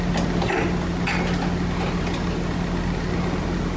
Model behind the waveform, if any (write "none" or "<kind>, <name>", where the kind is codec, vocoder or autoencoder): none